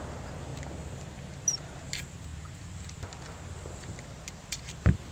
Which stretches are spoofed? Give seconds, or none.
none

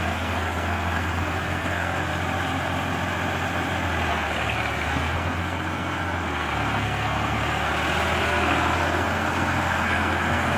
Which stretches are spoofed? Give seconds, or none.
0.0-2.1 (codec, SNAC); 4.1-7.7; 8.2-10.6

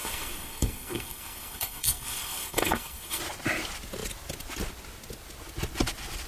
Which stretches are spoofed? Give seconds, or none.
0.0-3.2 (codec, SNAC)

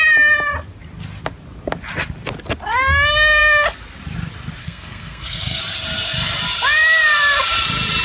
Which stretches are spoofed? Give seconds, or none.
4.6-5.6 (codec, SNAC)